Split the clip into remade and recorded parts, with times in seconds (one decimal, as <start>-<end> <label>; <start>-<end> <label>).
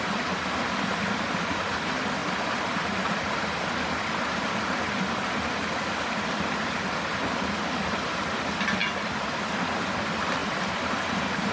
0.0-2.2 remade; 2.2-5.9 recorded; 5.9-8.8 remade; 8.8-9.5 recorded; 9.5-10.4 remade; 10.4-11.0 recorded; 11.0-11.5 remade